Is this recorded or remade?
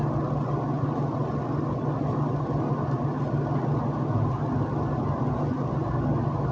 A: recorded